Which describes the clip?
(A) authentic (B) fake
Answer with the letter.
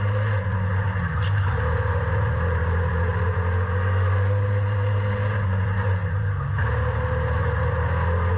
A